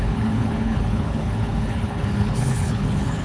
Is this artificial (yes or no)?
yes